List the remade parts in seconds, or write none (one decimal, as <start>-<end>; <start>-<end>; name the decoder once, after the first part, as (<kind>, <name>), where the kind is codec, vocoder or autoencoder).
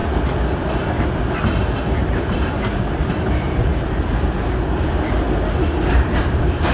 2.0-3.7 (vocoder, BigVGAN v2); 5.9-6.7